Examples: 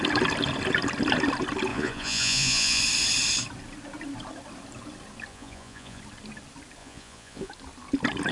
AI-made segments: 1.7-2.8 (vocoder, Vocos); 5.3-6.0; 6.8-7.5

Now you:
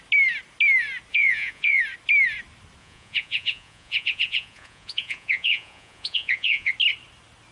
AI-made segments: 1.1-1.8 (vocoder, Vocos); 2.8-6.7